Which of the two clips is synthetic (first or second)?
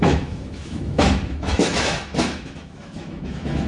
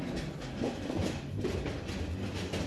first